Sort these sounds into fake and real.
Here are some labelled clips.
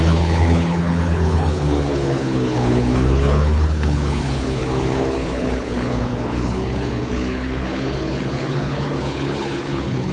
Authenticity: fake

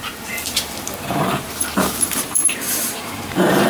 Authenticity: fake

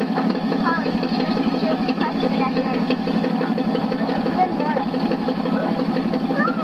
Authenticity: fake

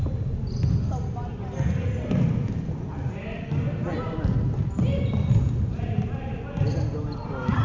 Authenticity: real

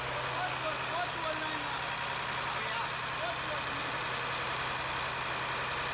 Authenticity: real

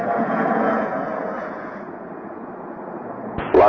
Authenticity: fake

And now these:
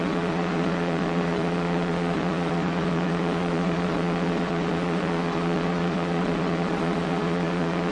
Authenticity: fake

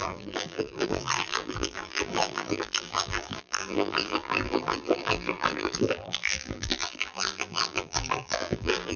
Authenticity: fake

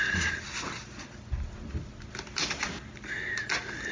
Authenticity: real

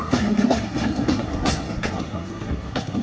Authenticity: fake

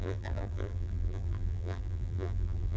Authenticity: fake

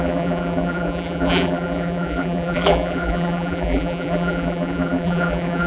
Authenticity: fake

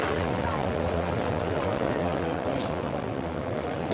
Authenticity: fake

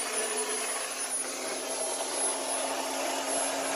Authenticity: real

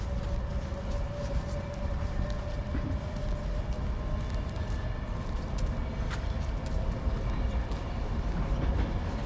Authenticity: real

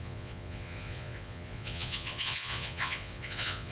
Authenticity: fake